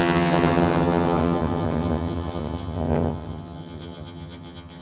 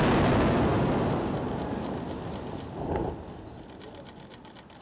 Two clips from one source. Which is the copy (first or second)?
first